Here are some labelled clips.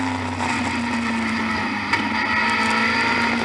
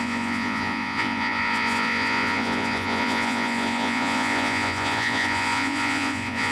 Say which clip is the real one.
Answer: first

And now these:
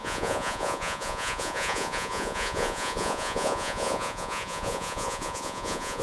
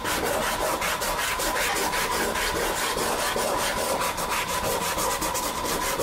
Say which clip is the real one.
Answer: second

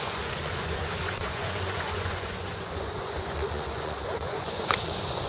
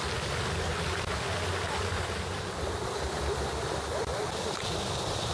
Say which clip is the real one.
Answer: second